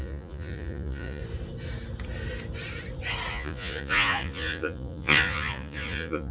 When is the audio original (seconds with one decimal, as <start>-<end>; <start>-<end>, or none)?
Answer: 1.2-3.3